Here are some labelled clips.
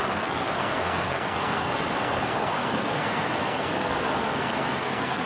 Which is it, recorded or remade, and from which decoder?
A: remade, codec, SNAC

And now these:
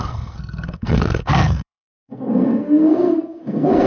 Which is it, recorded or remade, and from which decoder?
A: remade, codec, SNAC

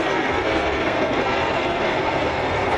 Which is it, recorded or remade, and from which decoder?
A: remade, codec, SNAC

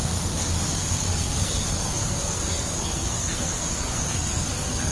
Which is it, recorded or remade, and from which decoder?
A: remade, codec, SNAC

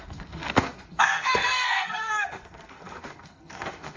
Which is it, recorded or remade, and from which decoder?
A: remade, codec, SNAC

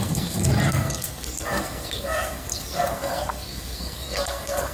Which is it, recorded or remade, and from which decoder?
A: remade, codec, SNAC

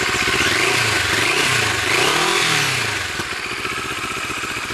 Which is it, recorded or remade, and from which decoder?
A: recorded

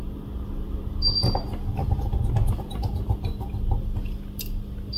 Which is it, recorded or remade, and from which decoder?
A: recorded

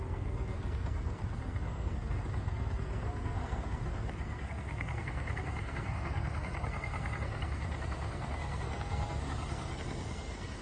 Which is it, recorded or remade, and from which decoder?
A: remade, codec, SNAC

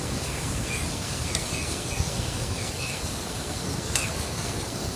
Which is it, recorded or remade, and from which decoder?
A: remade, codec, SNAC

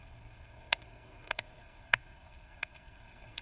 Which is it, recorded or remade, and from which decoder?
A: remade, codec, SNAC